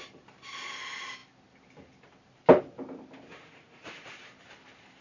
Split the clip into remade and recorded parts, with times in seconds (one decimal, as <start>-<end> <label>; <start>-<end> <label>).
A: 0.0-3.3 recorded; 3.3-4.1 remade; 4.1-5.0 recorded